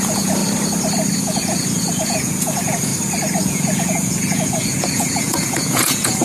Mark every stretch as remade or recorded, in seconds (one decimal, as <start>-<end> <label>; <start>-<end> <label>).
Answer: 0.0-0.4 remade; 0.4-1.2 recorded; 1.2-2.9 remade; 2.9-3.4 recorded; 3.4-6.2 remade